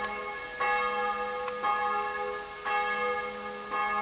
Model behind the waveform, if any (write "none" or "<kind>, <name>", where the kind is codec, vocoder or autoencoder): none